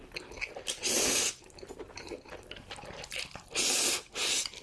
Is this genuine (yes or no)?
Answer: yes